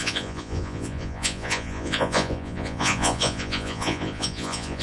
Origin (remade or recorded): remade